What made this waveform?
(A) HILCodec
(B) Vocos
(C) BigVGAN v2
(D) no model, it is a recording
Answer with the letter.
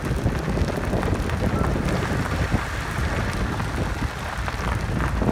D